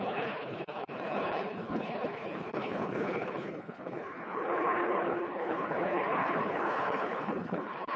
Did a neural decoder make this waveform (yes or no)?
yes